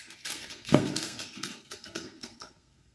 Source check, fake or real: fake